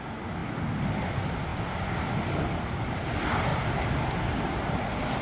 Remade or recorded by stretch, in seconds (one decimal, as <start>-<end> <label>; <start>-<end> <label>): 0.0-5.2 recorded